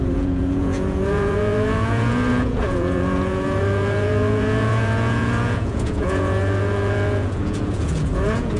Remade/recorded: remade